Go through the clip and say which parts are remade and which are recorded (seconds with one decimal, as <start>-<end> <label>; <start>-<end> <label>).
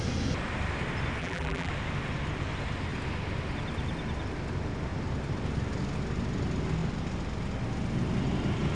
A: 0.0-1.2 recorded; 1.2-1.7 remade; 1.7-8.7 recorded